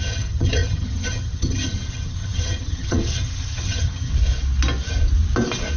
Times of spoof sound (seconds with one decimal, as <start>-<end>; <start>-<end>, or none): 0.0-4.1